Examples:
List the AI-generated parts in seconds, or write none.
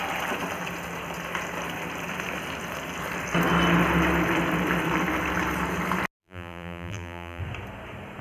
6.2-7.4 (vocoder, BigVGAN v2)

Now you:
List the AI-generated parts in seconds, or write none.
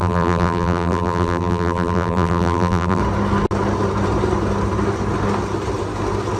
0.0-3.0 (vocoder, BigVGAN v2)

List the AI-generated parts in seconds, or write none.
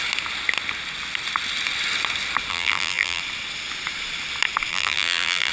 2.5-3.2 (vocoder, BigVGAN v2); 4.7-5.5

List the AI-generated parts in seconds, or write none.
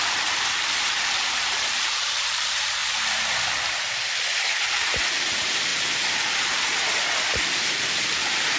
0.0-2.8 (vocoder, BigVGAN v2); 5.3-8.6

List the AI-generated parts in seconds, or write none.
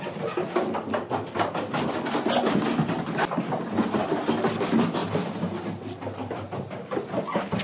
5.0-5.6 (vocoder, BigVGAN v2)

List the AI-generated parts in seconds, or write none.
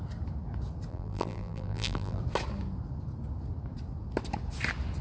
0.9-2.2 (vocoder, BigVGAN v2)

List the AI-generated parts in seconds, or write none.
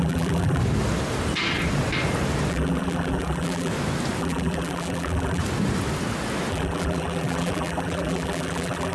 0.0-0.6 (vocoder, BigVGAN v2); 2.5-3.7; 4.2-5.4; 6.5-8.9